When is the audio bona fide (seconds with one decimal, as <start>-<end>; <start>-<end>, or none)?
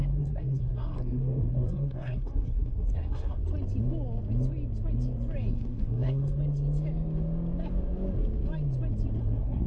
3.4-5.5; 6.4-9.2